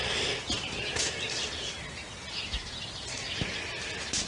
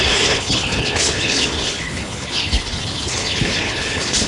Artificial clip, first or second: second